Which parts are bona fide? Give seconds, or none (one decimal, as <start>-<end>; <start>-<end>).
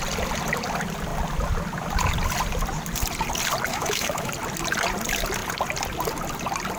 0.0-3.7; 4.3-6.8